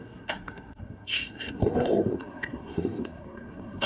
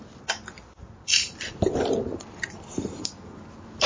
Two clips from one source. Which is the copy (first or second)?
first